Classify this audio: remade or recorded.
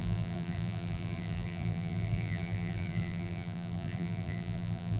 remade